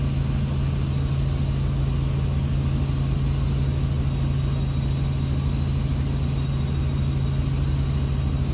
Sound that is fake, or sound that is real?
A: real